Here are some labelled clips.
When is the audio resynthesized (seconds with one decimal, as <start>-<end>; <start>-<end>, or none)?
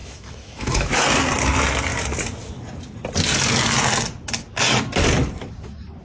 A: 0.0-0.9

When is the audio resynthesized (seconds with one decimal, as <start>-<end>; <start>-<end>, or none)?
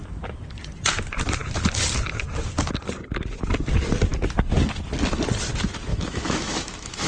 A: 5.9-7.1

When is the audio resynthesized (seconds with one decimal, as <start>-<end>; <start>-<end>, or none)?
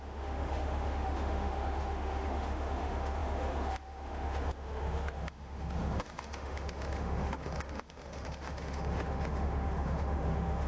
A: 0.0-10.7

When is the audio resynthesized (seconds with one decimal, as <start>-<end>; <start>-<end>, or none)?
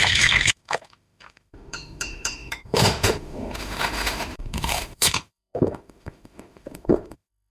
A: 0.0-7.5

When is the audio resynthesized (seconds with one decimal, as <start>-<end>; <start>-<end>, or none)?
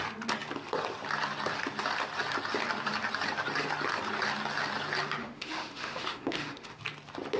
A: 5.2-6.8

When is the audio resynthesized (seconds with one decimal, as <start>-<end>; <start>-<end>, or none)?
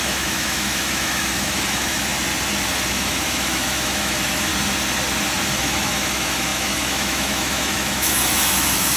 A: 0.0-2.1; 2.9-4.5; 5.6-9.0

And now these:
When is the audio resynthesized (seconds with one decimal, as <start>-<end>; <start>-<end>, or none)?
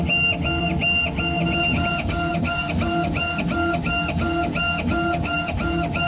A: none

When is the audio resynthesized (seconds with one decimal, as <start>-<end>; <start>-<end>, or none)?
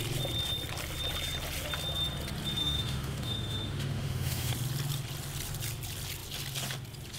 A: 2.6-4.5